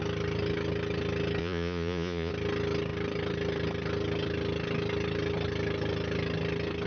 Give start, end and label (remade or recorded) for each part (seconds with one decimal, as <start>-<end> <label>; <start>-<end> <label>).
0.0-1.4 recorded; 1.4-2.3 remade; 2.3-6.9 recorded